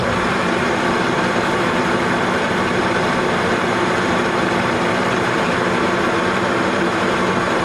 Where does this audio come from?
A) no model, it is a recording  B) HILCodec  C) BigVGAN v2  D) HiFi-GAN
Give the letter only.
C